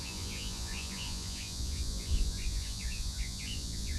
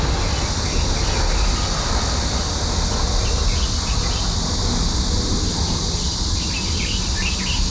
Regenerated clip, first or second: first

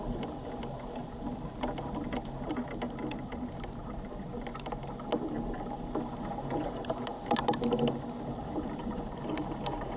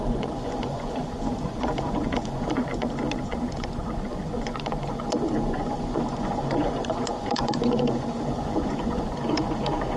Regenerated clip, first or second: second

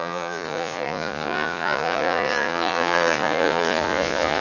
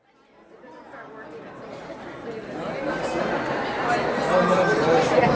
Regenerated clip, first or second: first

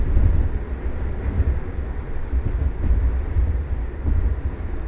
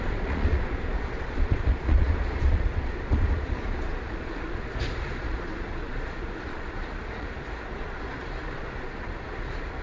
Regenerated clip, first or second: second